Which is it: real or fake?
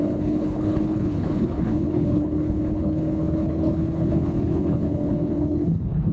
fake